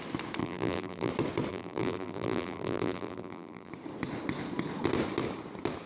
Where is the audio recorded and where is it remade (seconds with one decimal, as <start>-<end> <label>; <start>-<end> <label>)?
0.0-0.4 recorded; 0.4-1.1 remade; 1.1-1.5 recorded; 1.5-3.7 remade; 3.7-5.9 recorded